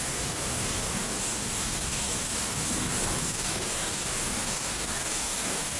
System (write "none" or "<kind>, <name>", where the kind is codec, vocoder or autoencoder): codec, DAC